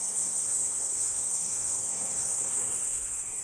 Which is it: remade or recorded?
remade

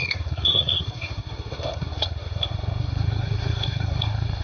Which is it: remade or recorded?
remade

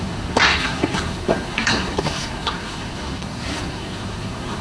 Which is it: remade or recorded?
remade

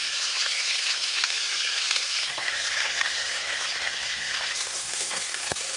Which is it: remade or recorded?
remade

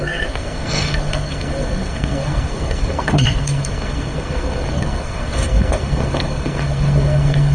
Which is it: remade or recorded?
remade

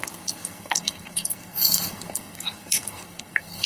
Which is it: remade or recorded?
remade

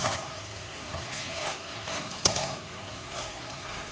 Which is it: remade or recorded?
remade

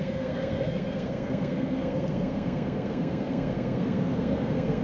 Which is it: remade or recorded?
remade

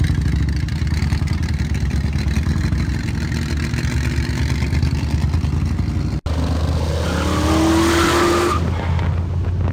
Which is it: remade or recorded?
recorded